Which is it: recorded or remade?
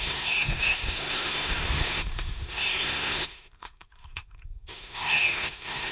remade